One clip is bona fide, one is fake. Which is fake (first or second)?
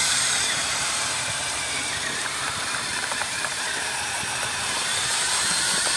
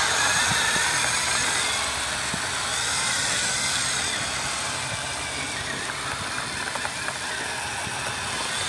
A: first